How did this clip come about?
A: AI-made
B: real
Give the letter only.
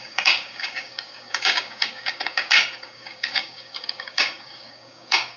A